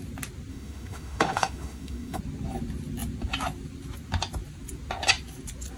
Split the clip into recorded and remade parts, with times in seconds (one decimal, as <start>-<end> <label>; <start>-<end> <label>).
0.0-0.5 recorded; 0.5-2.2 remade; 2.2-5.8 recorded